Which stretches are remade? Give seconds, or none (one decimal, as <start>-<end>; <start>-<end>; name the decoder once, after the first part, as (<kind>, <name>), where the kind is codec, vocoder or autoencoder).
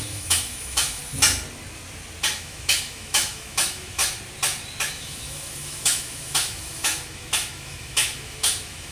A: 0.0-1.0 (autoencoder, DAC-VAE); 2.3-4.0; 4.9-8.9